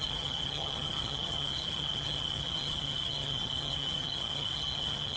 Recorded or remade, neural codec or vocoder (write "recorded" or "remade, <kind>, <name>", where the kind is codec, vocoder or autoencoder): remade, vocoder, HiFi-GAN